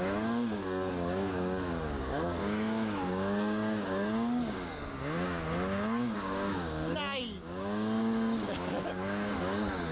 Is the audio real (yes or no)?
no